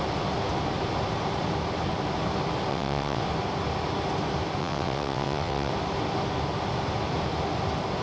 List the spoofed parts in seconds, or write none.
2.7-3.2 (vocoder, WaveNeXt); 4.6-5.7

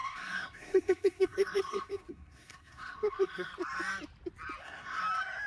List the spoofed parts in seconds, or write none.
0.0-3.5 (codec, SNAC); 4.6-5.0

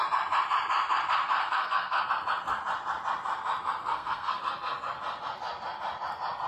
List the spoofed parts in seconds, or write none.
1.4-2.1 (codec, SNAC); 3.8-4.4